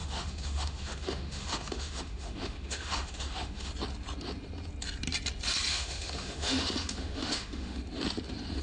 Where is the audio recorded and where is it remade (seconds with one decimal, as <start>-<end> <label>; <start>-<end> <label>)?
0.0-3.7 remade; 3.7-5.7 recorded; 5.7-7.8 remade; 7.8-8.6 recorded